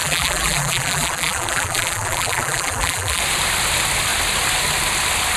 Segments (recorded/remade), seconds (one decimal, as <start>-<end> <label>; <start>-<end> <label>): 0.0-3.2 remade; 3.2-5.4 recorded